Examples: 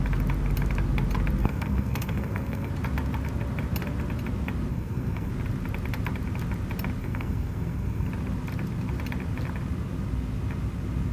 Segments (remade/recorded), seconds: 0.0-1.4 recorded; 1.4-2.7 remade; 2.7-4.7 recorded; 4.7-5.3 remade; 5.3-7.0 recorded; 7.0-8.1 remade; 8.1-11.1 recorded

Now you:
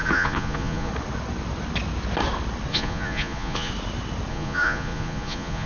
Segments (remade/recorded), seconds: 0.0-0.9 remade; 0.9-2.7 recorded; 2.7-3.7 remade; 3.7-4.3 recorded; 4.3-5.7 remade

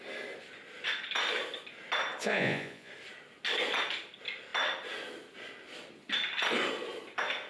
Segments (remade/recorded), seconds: 0.0-2.2 recorded; 2.2-2.9 remade; 2.9-7.5 recorded